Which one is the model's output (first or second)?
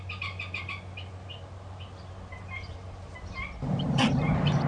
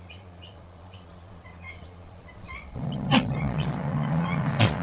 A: second